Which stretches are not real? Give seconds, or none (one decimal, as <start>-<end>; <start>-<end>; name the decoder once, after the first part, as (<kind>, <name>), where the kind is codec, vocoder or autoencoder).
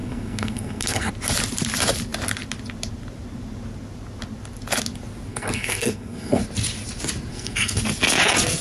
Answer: 0.0-1.1 (codec, SNAC); 5.3-6.4; 7.3-7.8